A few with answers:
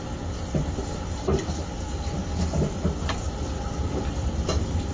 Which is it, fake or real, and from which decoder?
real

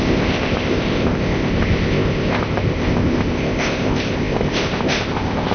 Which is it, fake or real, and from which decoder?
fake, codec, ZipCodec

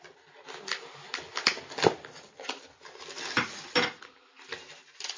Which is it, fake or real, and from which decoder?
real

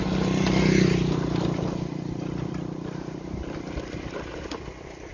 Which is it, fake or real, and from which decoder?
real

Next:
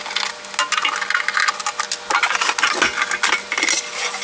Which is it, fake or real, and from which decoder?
real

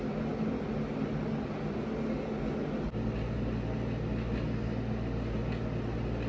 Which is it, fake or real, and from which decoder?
real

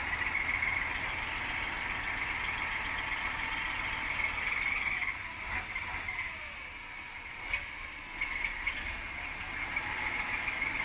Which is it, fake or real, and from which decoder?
real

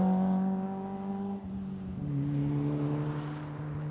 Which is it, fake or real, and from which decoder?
real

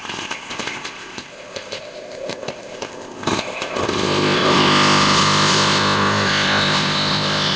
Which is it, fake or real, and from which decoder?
fake, codec, ZipCodec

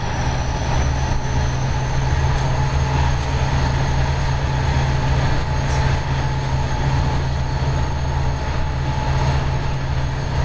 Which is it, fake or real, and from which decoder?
real